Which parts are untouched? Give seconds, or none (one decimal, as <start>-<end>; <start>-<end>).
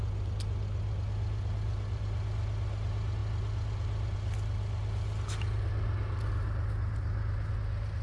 0.0-8.0